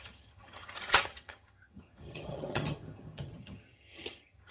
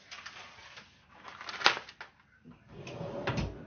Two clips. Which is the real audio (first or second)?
second